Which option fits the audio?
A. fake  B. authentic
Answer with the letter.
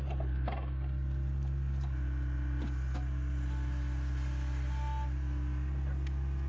B